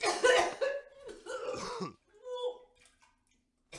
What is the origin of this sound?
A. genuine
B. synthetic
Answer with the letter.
A